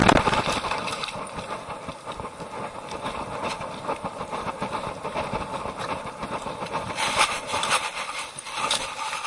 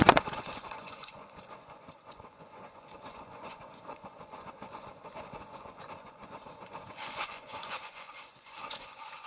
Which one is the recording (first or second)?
first